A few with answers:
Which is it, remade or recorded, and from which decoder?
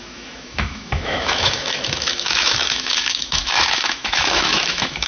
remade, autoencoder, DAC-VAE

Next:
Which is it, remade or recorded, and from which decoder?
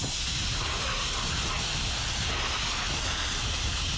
recorded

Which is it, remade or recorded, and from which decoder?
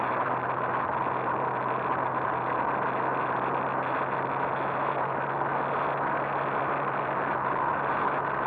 recorded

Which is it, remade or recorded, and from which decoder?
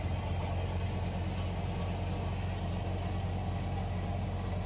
recorded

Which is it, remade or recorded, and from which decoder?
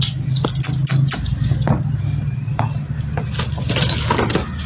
recorded